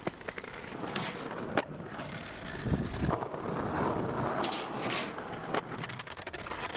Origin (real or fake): real